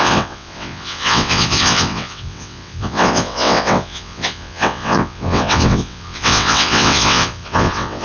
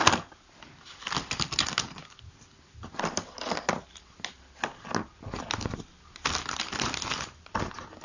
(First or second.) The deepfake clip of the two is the first